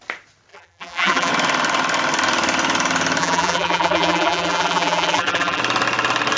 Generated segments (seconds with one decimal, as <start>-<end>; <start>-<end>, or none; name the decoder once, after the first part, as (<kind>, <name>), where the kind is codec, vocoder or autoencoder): 0.5-1.3 (vocoder, BigVGAN v2); 3.2-5.6